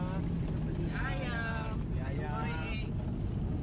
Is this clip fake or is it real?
real